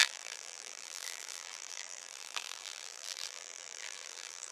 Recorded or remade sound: remade